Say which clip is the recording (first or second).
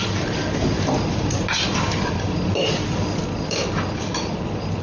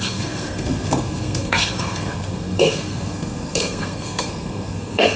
first